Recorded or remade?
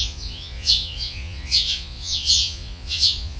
remade